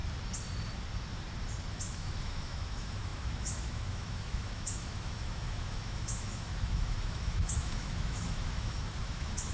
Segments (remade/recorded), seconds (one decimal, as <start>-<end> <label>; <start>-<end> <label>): 0.0-1.7 recorded; 1.7-9.5 remade